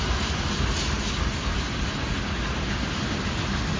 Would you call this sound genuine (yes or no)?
yes